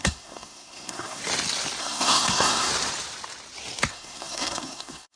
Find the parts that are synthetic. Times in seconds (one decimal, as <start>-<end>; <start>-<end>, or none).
0.0-1.2; 1.8-2.7; 3.9-5.2

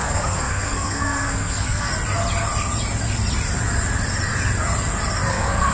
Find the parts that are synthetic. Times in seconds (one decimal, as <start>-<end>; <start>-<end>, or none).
0.0-1.9; 5.3-5.7

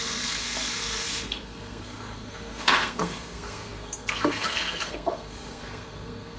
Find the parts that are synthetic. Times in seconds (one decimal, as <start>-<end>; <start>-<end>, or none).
0.0-6.4

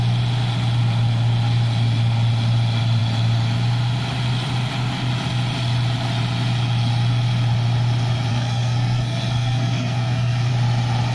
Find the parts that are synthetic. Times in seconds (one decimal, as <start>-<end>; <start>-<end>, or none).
8.3-10.5

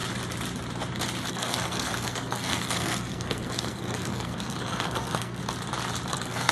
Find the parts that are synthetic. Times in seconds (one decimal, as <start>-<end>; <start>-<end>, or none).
1.3-5.4; 6.1-6.5

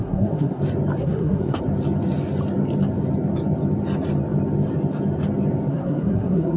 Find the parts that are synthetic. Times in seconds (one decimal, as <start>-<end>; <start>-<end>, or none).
0.0-0.6; 1.0-1.6; 5.7-6.6

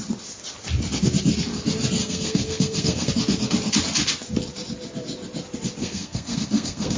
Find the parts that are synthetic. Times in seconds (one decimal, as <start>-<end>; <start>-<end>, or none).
2.0-3.1; 5.8-7.0

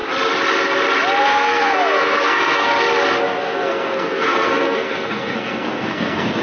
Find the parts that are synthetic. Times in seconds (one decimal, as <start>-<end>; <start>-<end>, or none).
1.2-2.7; 3.4-6.4